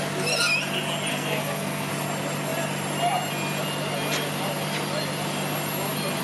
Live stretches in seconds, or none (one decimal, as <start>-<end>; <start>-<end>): 0.0-1.1; 1.9-6.2